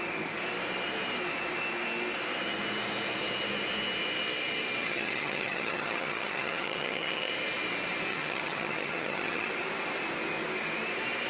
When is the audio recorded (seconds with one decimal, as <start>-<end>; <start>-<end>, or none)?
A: 0.0-4.8; 7.3-8.1; 9.5-11.3